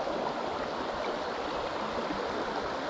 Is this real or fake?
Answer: real